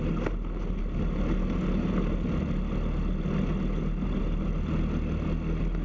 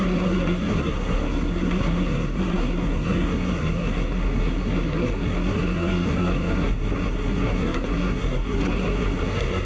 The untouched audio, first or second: first